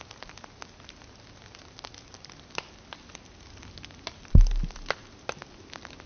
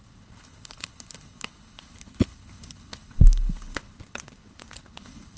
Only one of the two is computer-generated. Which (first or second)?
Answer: second